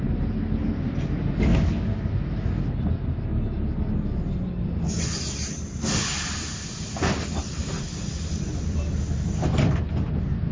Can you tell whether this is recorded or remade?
recorded